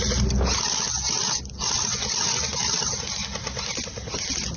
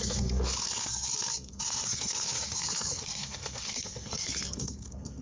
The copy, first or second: second